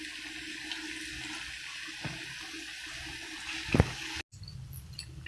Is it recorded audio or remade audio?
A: recorded